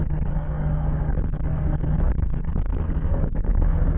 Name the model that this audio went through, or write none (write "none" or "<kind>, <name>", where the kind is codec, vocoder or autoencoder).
codec, SNAC